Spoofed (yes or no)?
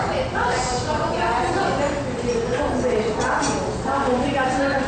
no